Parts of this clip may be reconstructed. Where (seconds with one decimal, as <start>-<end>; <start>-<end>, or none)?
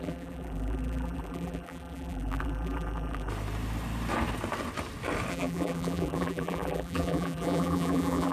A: 0.0-3.3; 5.3-8.3